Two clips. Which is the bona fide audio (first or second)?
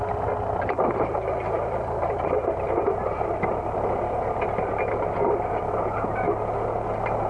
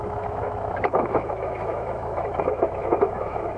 first